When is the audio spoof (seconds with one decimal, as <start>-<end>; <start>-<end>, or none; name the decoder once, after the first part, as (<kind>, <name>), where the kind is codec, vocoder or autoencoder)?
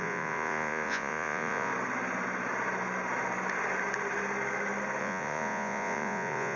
0.0-1.7 (vocoder, Vocos); 5.0-6.6